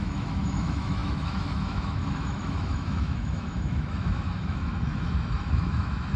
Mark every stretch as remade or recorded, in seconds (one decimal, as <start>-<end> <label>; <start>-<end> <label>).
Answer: 0.0-6.2 remade